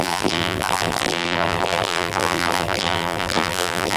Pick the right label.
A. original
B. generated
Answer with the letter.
B